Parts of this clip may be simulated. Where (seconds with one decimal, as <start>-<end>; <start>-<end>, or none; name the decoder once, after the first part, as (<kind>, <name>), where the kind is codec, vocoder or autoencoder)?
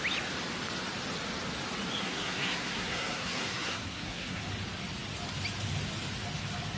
2.0-4.4 (codec, SNAC)